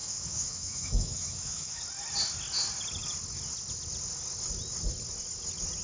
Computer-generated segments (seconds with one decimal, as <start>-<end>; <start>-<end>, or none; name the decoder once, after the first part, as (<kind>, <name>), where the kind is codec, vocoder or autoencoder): 0.0-1.8 (autoencoder, DAC-VAE)